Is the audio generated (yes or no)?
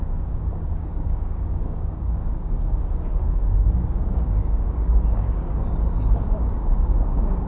yes